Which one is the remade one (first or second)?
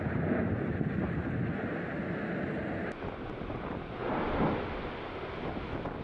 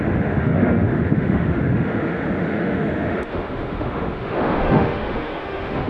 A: second